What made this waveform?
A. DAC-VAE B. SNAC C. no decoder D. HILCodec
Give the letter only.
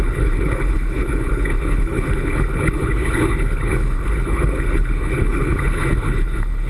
D